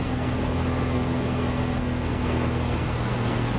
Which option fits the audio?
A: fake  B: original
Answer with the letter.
A